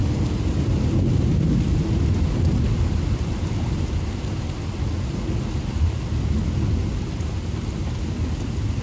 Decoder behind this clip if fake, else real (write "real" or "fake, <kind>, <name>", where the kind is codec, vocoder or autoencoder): real